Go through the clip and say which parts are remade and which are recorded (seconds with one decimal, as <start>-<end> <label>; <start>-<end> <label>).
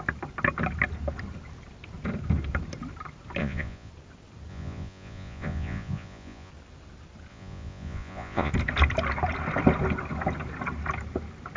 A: 0.0-3.4 recorded; 3.4-3.9 remade; 3.9-4.5 recorded; 4.5-6.5 remade; 6.5-7.3 recorded; 7.3-8.5 remade; 8.5-11.6 recorded